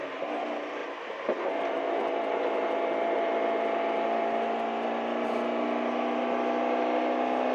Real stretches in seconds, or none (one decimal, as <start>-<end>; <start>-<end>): 0.0-7.5